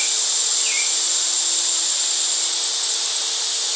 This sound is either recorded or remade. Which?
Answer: recorded